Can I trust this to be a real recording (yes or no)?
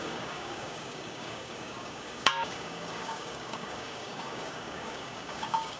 no